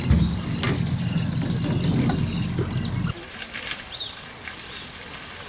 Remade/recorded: recorded